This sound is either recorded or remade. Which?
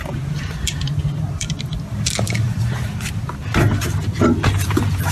remade